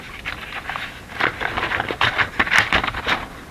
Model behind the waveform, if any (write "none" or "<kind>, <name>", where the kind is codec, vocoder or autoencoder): none